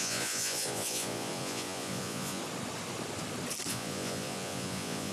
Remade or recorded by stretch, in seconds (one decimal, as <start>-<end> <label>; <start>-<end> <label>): 0.0-2.4 remade; 2.4-3.7 recorded; 3.7-5.1 remade